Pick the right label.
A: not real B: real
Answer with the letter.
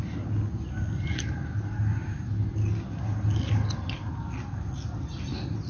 B